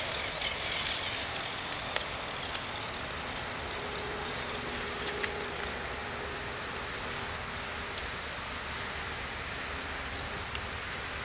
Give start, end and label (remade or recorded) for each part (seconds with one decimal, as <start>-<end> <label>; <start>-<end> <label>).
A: 0.0-11.2 recorded